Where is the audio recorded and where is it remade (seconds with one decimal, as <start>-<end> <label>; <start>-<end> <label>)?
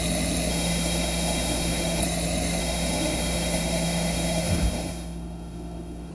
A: 0.0-0.5 recorded; 0.5-2.0 remade; 2.0-2.6 recorded; 2.6-6.1 remade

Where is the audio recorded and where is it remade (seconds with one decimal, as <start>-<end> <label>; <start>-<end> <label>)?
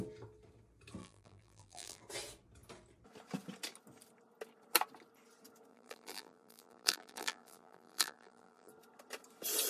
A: 0.0-1.0 recorded; 1.0-2.0 remade; 2.0-5.7 recorded; 5.7-8.7 remade; 8.7-9.7 recorded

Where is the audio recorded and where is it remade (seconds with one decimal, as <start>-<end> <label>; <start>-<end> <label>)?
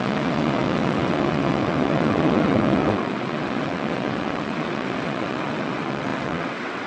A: 0.0-6.9 remade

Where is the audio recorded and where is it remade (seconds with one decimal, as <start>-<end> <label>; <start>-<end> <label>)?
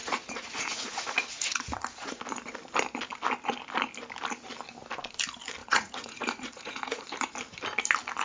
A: 0.0-2.2 remade; 2.2-5.6 recorded; 5.6-7.1 remade; 7.1-8.2 recorded